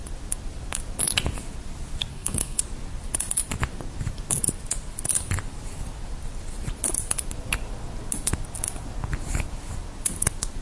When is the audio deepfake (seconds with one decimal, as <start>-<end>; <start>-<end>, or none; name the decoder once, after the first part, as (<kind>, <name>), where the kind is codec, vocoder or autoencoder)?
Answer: 2.1-2.6 (codec, SNAC)